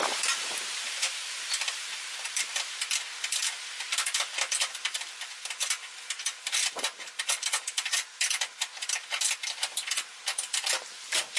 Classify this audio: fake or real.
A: fake